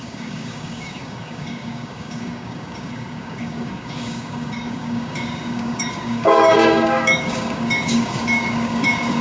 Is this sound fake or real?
fake